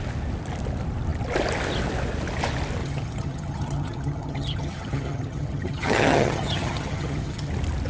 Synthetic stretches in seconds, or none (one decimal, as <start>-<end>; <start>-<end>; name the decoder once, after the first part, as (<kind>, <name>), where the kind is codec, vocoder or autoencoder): 2.8-7.5 (vocoder, HiFi-GAN)